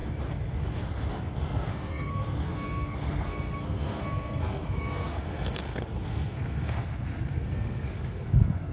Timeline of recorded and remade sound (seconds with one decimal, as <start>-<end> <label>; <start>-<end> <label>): 0.0-1.1 recorded; 1.1-8.7 remade